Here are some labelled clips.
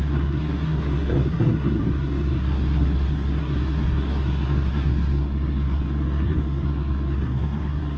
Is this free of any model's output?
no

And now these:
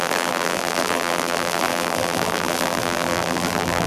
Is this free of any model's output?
no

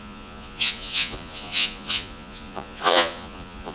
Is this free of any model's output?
no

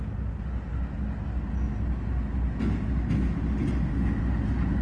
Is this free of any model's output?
yes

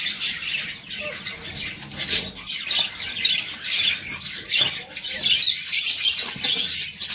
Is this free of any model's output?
yes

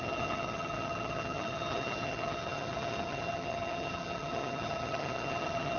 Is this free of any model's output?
no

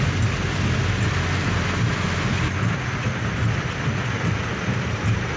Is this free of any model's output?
yes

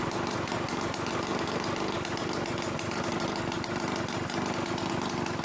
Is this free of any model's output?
yes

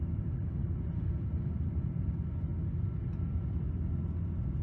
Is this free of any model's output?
yes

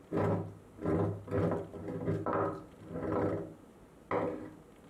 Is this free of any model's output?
yes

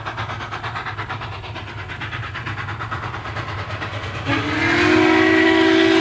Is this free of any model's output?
yes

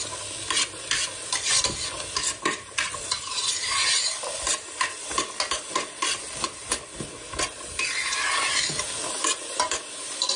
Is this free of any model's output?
yes